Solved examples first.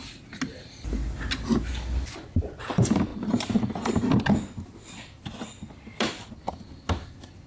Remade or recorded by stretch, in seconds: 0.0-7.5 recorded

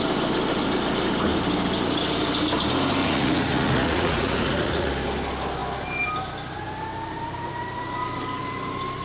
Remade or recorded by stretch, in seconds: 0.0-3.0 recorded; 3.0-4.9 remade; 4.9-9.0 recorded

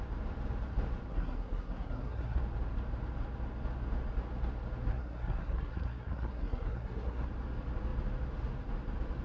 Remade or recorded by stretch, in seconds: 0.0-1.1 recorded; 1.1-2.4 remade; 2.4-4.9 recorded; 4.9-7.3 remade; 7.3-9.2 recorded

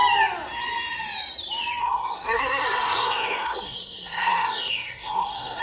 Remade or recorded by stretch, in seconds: 0.0-1.8 recorded; 1.8-5.6 remade